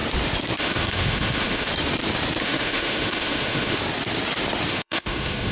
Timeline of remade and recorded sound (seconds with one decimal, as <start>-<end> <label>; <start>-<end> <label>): 0.0-0.6 recorded; 0.6-1.7 remade; 1.7-2.4 recorded; 2.4-3.8 remade; 3.8-4.7 recorded; 4.7-5.5 remade